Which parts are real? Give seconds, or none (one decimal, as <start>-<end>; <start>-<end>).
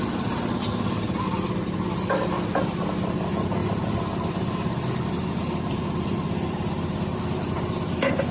0.0-8.3